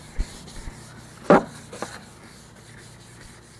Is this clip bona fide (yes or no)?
yes